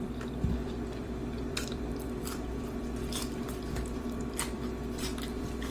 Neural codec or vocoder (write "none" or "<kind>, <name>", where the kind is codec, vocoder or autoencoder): vocoder, BigVGAN v2